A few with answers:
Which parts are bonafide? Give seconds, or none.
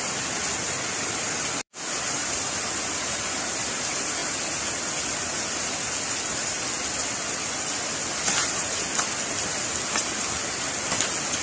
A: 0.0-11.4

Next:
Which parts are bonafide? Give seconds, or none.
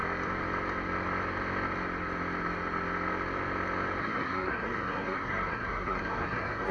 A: 0.0-4.0